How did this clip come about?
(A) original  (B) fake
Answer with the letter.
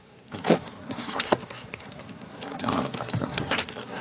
B